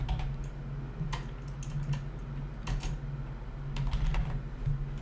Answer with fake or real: real